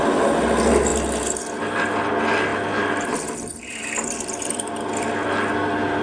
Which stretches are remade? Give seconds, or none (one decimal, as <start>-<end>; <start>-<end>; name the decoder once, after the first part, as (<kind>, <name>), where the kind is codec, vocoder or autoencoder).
none